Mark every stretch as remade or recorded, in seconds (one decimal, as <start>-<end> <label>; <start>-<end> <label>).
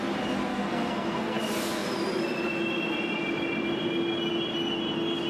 0.0-0.5 recorded; 0.5-1.4 remade; 1.4-5.3 recorded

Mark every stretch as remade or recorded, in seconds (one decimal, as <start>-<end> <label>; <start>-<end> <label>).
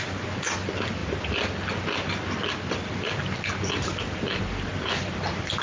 0.0-5.6 recorded